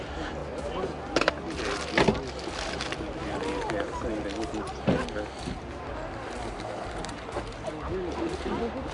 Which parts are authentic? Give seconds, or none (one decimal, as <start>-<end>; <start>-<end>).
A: 0.0-8.9